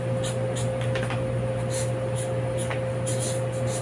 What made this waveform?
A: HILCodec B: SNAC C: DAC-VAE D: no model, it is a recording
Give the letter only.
D